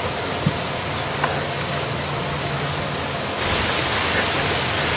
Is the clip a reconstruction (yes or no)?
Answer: no